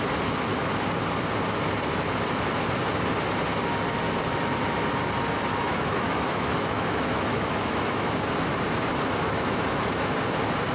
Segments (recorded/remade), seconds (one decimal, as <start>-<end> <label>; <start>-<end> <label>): 0.0-5.5 recorded; 5.5-8.2 remade; 8.2-9.2 recorded; 9.2-10.1 remade; 10.1-10.7 recorded